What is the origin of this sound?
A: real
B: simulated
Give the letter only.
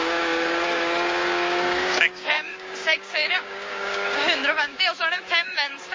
B